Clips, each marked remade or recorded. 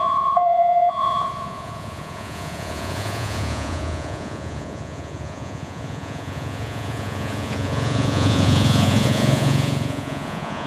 remade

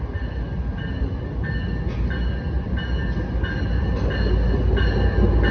recorded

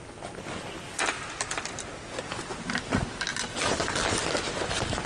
recorded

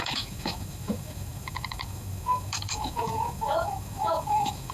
remade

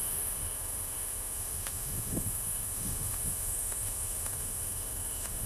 remade